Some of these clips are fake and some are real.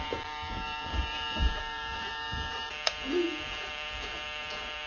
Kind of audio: fake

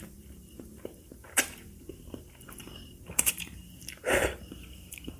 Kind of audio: fake